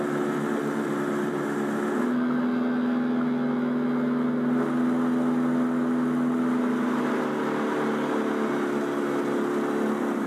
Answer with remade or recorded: recorded